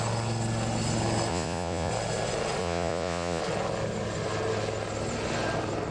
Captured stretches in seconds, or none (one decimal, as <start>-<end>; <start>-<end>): 0.0-1.3; 1.9-2.6; 3.4-5.9